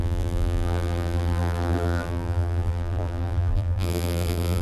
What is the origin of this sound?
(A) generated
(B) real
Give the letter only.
A